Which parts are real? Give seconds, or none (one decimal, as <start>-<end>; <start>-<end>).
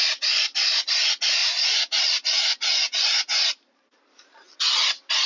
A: 0.0-1.4; 4.3-5.3